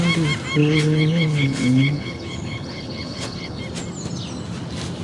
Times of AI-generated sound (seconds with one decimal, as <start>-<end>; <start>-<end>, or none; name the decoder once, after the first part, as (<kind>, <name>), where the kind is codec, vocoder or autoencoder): 0.6-3.6 (codec, HILCodec)